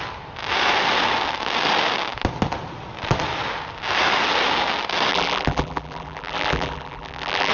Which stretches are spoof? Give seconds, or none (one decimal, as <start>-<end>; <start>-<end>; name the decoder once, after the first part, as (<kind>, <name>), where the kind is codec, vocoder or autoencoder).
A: 5.1-7.5 (vocoder, BigVGAN v2)